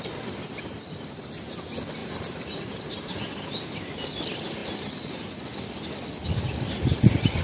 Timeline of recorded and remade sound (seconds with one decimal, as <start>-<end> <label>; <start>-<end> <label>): 0.0-7.4 recorded